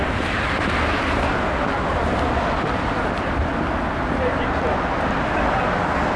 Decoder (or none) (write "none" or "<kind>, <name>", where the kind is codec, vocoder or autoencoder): none